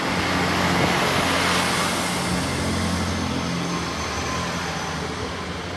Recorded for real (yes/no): yes